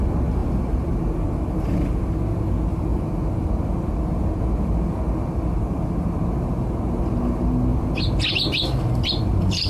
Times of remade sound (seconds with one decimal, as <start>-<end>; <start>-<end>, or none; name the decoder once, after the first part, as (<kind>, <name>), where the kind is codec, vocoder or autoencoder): 0.4-0.9 (vocoder, BigVGAN v2); 7.7-9.7